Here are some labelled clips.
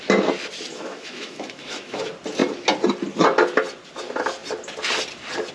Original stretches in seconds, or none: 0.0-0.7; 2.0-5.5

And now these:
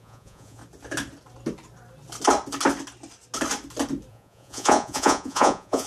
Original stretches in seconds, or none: 0.6-4.1

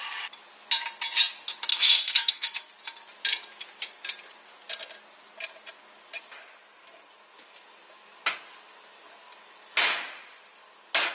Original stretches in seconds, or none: 0.0-1.7; 2.7-11.1

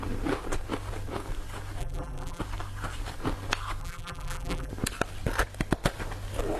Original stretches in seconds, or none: 0.0-1.8; 2.4-3.8; 4.7-6.6

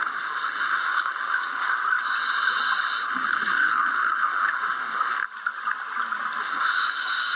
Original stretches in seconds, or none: 1.8-3.1; 5.2-6.4

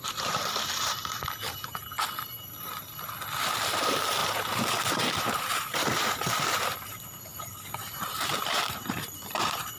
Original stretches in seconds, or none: 1.0-3.8